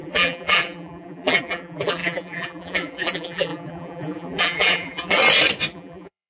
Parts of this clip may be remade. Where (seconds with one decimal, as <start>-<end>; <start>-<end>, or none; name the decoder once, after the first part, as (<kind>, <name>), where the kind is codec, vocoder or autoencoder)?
0.0-5.2 (vocoder, BigVGAN v2); 5.7-6.3